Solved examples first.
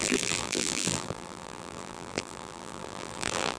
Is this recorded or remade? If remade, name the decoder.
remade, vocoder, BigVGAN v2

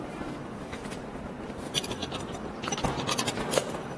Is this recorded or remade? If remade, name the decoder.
remade, vocoder, BigVGAN v2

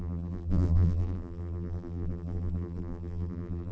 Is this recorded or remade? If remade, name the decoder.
remade, vocoder, BigVGAN v2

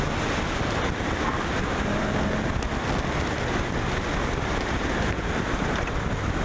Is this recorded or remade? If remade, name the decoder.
recorded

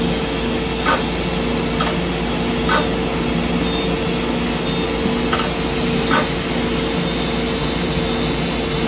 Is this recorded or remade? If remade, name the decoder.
recorded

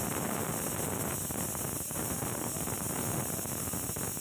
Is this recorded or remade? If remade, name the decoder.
recorded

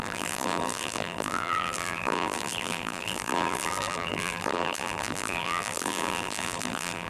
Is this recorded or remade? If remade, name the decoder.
remade, vocoder, BigVGAN v2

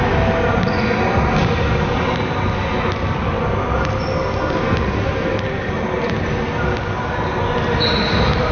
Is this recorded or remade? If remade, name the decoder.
recorded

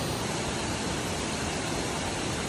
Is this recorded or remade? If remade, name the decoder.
remade, vocoder, BigVGAN v2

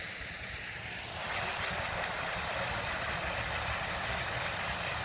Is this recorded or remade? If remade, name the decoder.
remade, vocoder, BigVGAN v2